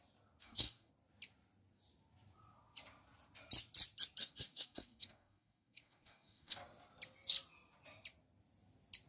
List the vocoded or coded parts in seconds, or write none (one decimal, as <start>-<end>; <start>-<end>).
0.4-0.9; 4.2-6.6